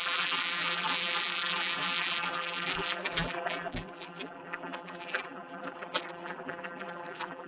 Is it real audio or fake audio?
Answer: fake